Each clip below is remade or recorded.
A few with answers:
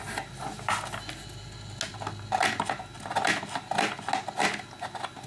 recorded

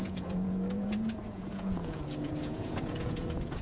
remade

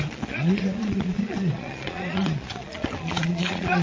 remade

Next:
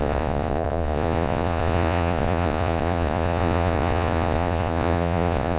remade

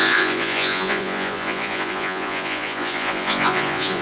remade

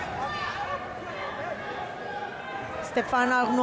recorded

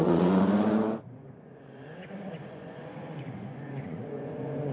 remade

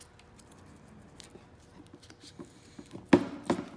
recorded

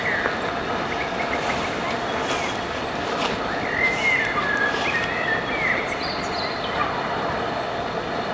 recorded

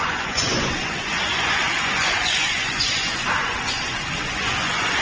remade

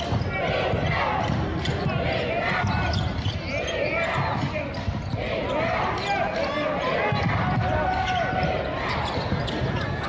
recorded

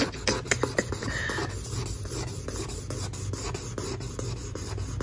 recorded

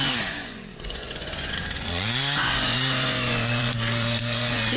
remade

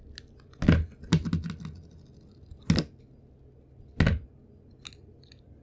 recorded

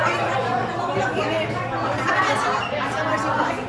recorded